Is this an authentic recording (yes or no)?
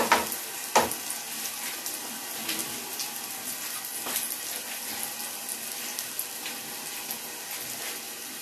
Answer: yes